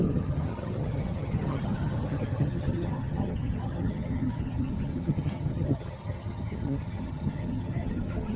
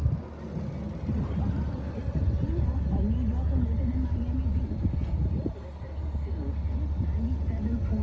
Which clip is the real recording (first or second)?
second